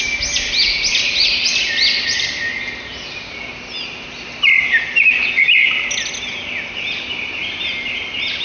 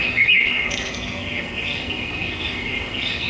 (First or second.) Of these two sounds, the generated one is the second